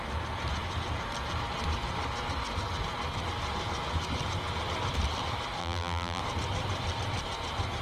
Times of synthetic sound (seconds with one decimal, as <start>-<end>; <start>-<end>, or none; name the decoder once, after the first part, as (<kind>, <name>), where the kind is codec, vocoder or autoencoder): 5.6-6.2 (vocoder, BigVGAN v2)